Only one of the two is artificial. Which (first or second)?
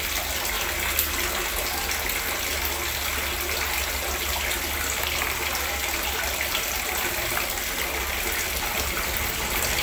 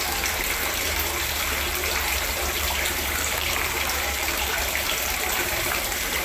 second